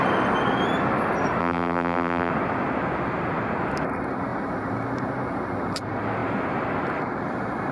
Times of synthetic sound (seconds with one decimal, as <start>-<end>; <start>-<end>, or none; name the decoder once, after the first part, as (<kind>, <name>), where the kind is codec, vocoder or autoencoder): 1.4-2.3 (vocoder, BigVGAN v2)